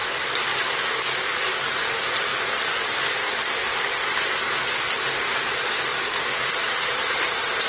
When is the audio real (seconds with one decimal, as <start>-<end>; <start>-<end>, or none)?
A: 0.0-6.5